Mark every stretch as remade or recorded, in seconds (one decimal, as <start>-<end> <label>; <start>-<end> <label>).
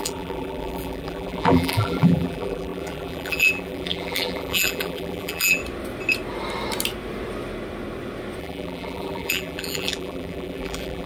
0.0-5.6 remade; 5.6-8.4 recorded; 8.4-11.1 remade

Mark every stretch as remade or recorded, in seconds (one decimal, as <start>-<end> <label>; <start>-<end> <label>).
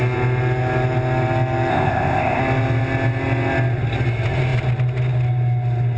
0.0-1.7 recorded; 1.7-2.4 remade; 2.4-6.0 recorded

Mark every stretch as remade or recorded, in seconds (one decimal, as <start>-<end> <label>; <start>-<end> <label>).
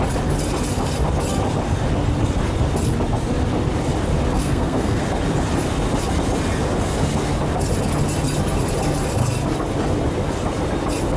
0.0-4.4 recorded; 4.4-5.0 remade; 5.0-11.2 recorded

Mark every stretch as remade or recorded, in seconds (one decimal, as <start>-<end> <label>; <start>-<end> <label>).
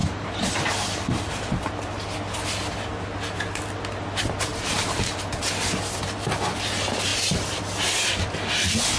0.0-1.6 remade; 1.6-4.5 recorded; 4.5-5.3 remade; 5.3-9.0 recorded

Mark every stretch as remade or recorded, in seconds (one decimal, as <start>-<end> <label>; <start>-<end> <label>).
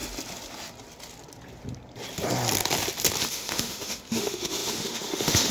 0.0-3.3 recorded; 3.3-5.5 remade